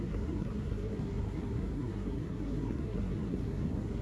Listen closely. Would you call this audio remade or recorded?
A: remade